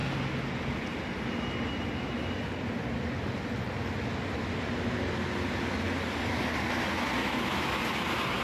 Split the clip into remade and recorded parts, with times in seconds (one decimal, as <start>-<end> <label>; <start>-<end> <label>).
0.0-7.2 recorded; 7.2-7.8 remade; 7.8-8.4 recorded